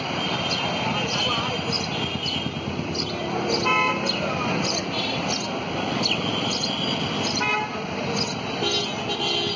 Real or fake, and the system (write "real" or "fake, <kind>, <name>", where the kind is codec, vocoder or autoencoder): real